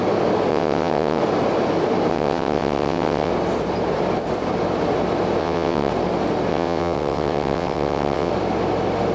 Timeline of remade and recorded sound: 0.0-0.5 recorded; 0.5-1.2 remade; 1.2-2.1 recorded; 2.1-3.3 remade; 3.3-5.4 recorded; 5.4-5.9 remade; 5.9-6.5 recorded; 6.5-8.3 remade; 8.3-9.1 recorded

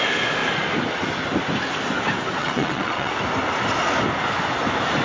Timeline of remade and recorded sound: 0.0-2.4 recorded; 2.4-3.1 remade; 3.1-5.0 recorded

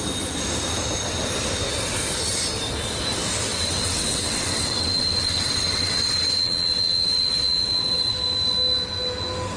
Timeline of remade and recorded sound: 0.0-3.5 recorded; 3.5-8.1 remade; 8.1-9.6 recorded

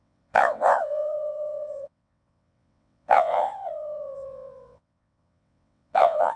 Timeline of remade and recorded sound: 0.0-6.4 remade